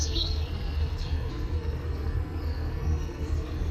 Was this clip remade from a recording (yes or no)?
yes